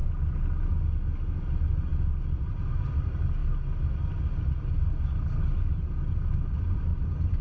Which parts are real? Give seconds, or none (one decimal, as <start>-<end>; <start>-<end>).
0.0-7.4